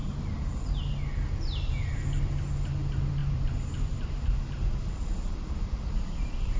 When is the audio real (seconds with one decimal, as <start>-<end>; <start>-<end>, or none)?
0.0-3.2; 4.1-6.6